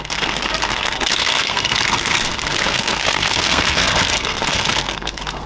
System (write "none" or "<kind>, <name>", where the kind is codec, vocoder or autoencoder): codec, SNAC